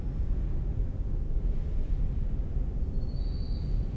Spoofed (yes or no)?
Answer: no